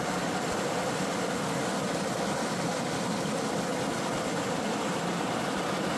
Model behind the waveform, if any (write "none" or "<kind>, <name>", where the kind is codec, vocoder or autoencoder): none